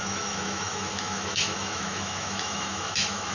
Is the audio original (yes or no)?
no